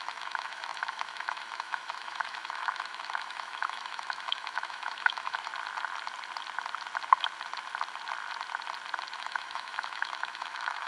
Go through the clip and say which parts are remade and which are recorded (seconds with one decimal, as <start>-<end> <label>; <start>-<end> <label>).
0.0-5.5 remade; 5.5-9.2 recorded; 9.2-10.9 remade